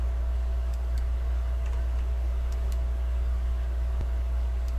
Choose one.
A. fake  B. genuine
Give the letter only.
A